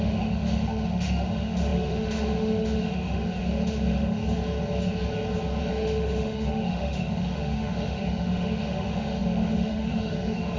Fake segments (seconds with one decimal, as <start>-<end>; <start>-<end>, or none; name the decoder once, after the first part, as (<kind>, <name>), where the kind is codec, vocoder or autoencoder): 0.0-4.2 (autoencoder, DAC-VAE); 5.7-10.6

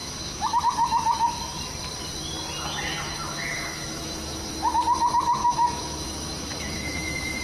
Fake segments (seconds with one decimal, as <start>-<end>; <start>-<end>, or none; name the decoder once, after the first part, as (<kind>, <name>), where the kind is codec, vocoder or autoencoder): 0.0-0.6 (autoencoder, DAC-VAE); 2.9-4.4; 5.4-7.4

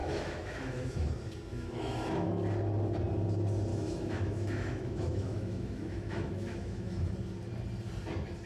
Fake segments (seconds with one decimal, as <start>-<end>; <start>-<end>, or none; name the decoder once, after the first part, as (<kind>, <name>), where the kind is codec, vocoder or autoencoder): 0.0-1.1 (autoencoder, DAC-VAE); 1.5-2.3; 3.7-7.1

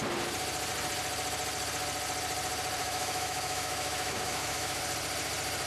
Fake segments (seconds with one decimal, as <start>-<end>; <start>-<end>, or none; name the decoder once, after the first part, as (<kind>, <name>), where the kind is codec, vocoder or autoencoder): 2.8-4.8 (autoencoder, DAC-VAE)